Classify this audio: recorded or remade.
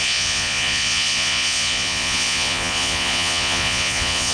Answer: remade